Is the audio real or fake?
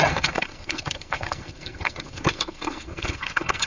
fake